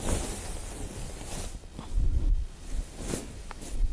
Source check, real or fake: real